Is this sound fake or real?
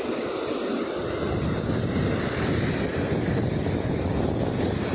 real